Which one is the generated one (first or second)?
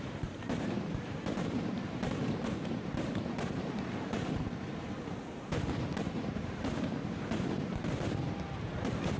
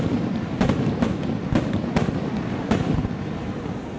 first